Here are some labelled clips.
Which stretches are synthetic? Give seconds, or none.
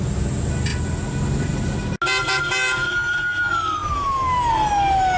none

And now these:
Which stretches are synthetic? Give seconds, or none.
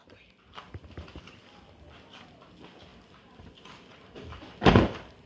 0.0-1.2; 2.9-5.3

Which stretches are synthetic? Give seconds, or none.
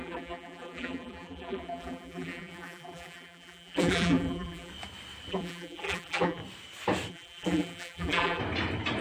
0.0-4.7; 5.3-6.4; 7.1-8.4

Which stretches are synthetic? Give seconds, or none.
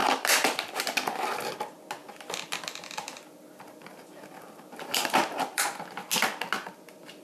0.0-0.7; 2.0-5.8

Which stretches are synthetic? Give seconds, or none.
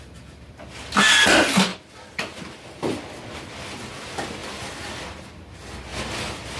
1.7-3.9; 4.4-5.2; 5.9-6.6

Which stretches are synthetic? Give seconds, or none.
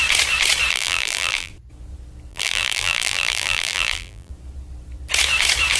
0.7-1.5; 2.3-4.3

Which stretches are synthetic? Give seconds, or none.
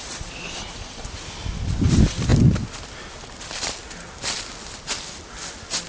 0.0-2.3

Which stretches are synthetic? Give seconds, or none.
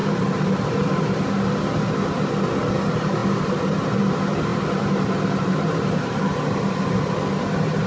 0.0-1.3; 4.5-6.2